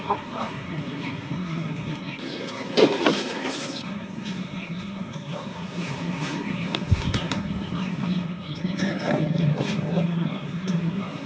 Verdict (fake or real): fake